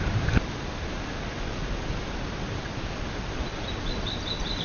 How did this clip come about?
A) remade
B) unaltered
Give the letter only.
B